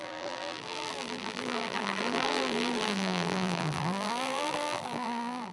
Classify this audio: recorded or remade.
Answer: remade